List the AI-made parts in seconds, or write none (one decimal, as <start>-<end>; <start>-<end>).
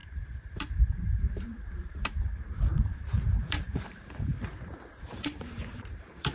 0.0-4.3; 4.9-6.3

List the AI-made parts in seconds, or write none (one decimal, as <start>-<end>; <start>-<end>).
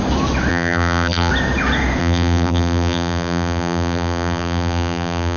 0.5-1.3; 2.0-5.4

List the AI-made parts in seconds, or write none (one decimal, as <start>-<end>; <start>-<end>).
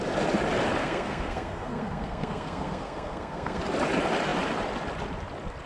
0.8-3.6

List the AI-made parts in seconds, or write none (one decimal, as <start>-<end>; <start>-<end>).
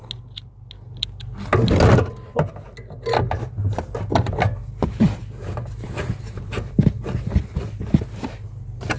none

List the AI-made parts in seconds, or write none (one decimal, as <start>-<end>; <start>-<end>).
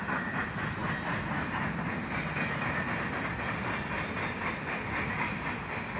none